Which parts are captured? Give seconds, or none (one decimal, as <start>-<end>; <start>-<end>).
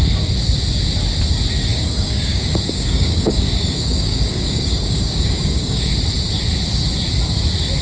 0.0-1.7; 5.9-7.8